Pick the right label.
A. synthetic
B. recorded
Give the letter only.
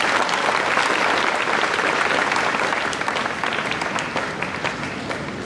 B